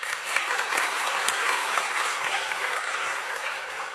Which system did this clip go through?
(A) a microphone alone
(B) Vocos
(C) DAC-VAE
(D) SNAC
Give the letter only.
D